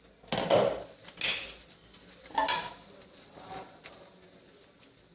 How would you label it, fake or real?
real